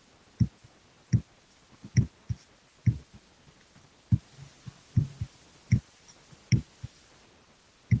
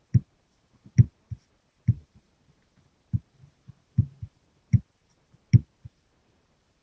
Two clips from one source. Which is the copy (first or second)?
second